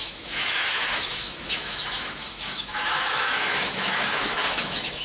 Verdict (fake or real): fake